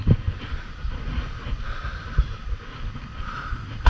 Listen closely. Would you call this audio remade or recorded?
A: recorded